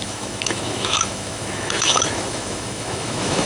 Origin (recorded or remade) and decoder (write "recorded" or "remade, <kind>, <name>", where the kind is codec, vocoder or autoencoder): remade, autoencoder, DAC-VAE